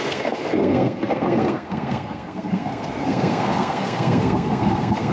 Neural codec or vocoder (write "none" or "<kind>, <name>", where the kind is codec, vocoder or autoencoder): codec, SNAC